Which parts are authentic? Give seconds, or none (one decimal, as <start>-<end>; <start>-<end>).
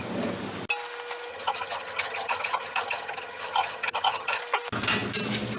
0.0-1.3; 4.4-5.6